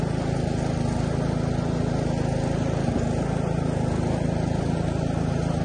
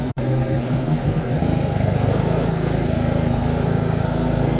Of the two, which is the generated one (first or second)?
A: second